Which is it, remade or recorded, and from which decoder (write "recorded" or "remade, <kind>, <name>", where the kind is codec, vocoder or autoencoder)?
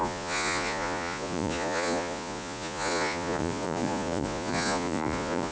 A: remade, vocoder, Vocos